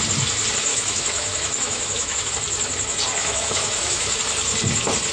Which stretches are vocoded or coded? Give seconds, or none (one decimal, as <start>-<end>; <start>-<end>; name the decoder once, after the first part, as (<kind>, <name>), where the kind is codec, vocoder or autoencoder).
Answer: 0.7-2.3 (autoencoder, DAC-VAE); 3.2-4.2